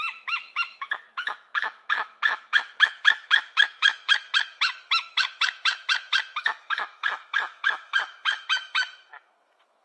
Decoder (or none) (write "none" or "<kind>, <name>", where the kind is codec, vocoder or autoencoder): autoencoder, DAC-VAE